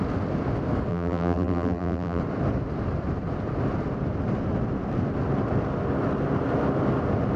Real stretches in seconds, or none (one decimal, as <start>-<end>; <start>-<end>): 0.0-0.9; 2.2-7.4